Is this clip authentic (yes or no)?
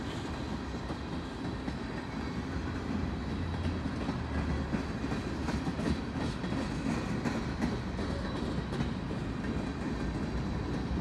yes